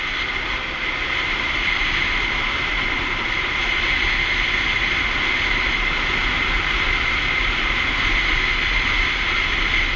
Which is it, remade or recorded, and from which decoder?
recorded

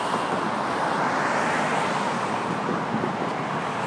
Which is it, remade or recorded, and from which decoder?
recorded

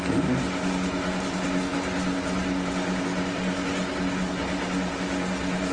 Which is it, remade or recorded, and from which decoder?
recorded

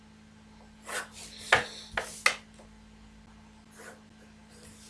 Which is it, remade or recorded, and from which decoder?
recorded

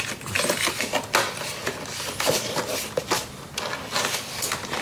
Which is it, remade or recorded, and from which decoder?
recorded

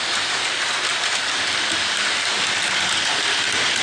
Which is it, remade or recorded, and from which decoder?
recorded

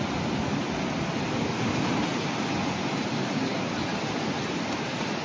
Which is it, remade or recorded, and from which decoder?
recorded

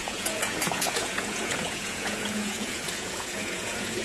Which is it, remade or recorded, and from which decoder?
remade, vocoder, Vocos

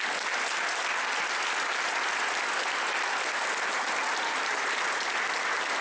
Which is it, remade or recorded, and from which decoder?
recorded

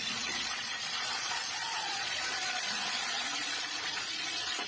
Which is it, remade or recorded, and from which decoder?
remade, vocoder, Vocos